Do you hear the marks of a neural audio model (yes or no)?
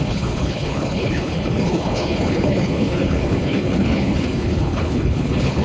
yes